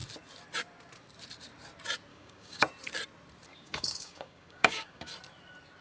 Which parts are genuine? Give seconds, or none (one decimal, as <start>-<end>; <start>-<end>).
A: 0.0-2.1; 2.6-3.5; 5.1-5.8